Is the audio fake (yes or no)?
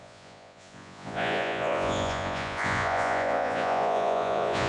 yes